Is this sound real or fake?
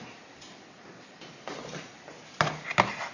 real